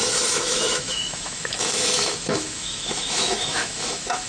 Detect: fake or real fake